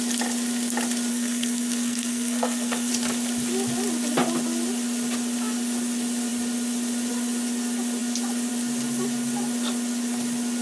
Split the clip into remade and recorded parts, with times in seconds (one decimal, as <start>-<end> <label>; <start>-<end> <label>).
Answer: 0.0-1.1 recorded; 1.1-2.9 remade; 2.9-10.6 recorded